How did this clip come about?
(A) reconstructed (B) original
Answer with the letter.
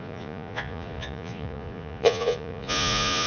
A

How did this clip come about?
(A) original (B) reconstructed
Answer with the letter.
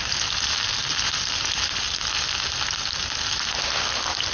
A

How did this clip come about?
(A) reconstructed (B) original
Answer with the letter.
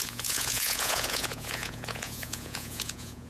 A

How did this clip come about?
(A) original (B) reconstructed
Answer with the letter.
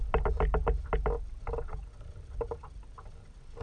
A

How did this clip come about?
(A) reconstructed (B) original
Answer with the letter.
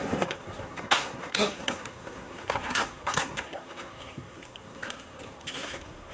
A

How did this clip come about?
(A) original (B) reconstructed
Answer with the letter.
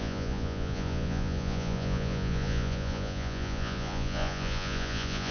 B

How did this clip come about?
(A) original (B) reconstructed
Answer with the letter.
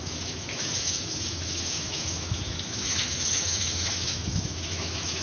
B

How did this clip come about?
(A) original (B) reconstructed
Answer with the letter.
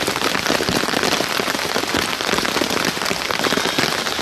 A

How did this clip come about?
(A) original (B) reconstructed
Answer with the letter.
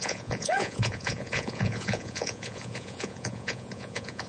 B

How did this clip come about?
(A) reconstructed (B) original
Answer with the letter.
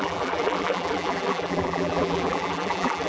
A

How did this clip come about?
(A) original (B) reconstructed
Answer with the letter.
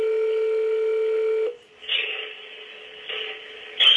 A